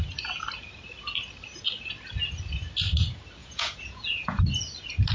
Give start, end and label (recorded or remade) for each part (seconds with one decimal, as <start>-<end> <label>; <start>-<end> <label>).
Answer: 0.0-3.4 recorded; 3.4-4.4 remade; 4.4-5.1 recorded